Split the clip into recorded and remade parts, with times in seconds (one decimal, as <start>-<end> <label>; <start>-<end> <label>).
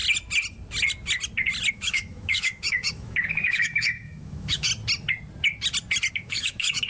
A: 0.0-1.7 recorded; 1.7-4.7 remade; 4.7-6.1 recorded; 6.1-6.9 remade